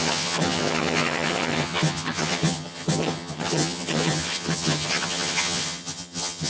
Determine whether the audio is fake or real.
fake